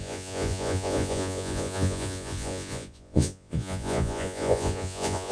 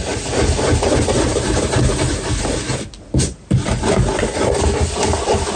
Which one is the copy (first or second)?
first